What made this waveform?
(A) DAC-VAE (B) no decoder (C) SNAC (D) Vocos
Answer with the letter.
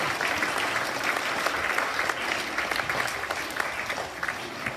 B